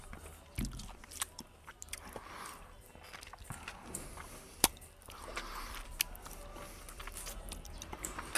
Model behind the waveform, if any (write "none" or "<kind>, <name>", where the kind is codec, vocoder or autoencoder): none